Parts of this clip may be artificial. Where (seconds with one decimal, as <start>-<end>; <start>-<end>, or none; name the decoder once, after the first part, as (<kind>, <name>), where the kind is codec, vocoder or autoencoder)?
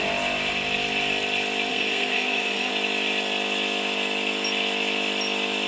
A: 1.7-2.7 (codec, SNAC)